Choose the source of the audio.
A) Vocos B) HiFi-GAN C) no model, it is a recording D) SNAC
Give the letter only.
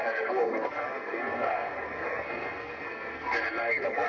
D